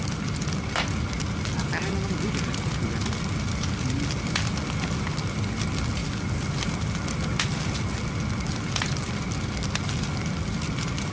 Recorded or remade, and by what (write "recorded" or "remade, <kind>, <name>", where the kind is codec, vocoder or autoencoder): recorded